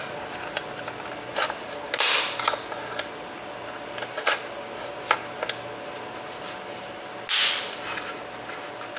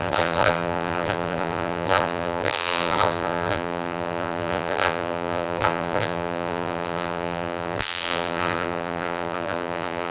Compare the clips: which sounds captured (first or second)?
first